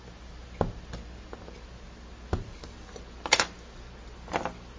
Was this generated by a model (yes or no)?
no